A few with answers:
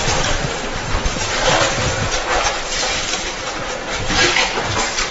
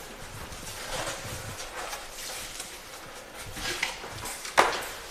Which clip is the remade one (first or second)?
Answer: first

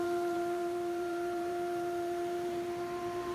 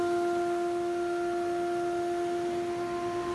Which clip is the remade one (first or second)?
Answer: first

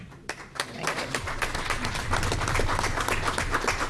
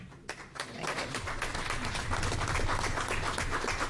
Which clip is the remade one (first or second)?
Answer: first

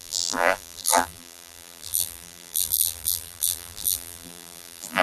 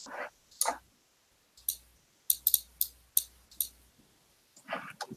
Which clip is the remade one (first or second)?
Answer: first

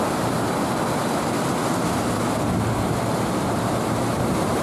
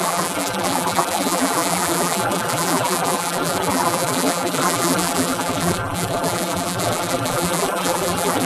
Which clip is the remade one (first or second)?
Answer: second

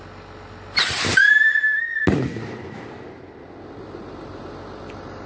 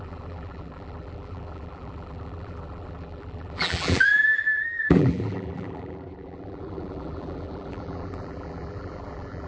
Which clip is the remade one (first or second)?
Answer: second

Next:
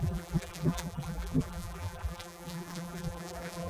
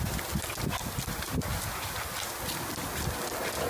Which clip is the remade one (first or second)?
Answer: first